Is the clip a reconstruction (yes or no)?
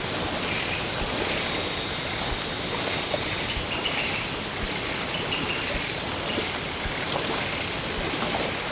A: no